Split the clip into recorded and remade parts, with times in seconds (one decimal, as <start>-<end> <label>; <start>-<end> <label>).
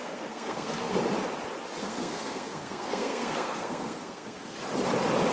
0.0-0.9 remade; 0.9-1.8 recorded; 1.8-4.5 remade; 4.5-5.3 recorded